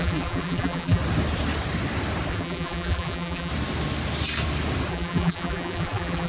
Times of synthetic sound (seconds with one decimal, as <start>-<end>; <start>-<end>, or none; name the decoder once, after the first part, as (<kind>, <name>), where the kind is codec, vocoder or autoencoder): 0.0-1.0 (vocoder, BigVGAN v2); 2.3-3.5; 4.9-6.3

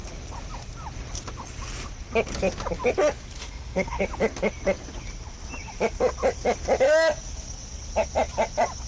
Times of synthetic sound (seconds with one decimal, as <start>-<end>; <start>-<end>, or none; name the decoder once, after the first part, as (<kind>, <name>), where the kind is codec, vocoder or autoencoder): 3.4-4.0 (autoencoder, DAC-VAE)

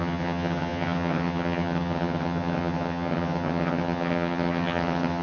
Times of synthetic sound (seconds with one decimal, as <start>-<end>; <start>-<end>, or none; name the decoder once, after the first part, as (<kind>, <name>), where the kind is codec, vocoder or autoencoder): 0.0-5.2 (vocoder, HiFi-GAN)

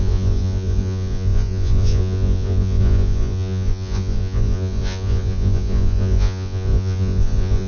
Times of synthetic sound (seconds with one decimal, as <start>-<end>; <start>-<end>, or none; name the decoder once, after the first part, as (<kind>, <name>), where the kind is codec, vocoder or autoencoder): 0.0-7.7 (vocoder, Vocos)

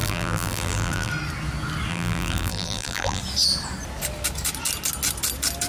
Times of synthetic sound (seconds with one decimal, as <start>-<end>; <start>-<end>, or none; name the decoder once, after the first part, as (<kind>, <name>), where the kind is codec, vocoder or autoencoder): 0.0-1.1 (vocoder, BigVGAN v2); 1.9-3.2

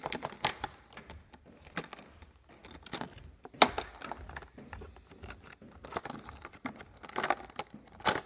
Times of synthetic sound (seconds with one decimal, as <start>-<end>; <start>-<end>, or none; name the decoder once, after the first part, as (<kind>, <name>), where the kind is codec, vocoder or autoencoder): none

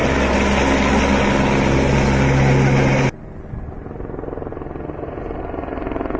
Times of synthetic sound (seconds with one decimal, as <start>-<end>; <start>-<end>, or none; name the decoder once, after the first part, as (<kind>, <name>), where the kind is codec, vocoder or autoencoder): none

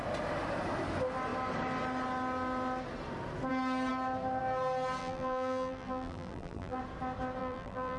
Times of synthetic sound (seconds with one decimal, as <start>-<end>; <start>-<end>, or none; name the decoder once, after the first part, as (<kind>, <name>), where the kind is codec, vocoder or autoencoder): 5.0-6.8 (vocoder, BigVGAN v2); 7.4-8.0